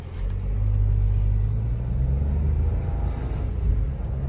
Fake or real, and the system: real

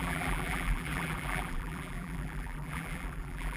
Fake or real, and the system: fake, vocoder, BigVGAN v2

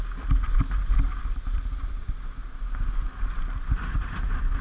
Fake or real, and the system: real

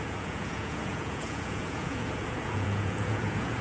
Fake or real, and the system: fake, vocoder, Vocos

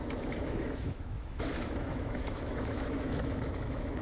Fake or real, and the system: fake, autoencoder, DAC-VAE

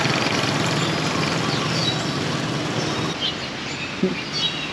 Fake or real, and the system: real